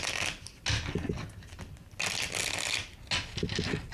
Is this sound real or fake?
real